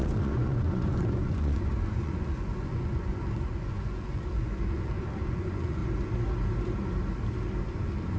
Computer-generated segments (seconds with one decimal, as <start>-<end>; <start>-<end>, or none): 0.0-5.8; 7.6-8.2